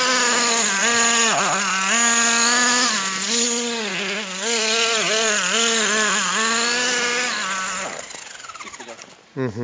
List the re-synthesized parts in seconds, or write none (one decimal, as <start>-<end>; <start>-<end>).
none